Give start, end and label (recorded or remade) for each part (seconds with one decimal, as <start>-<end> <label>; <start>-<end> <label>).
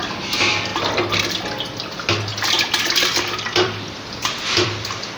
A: 0.0-0.7 remade; 0.7-3.2 recorded; 3.2-5.2 remade